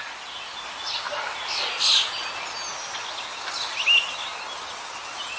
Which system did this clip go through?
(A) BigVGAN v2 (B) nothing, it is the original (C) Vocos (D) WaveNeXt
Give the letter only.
B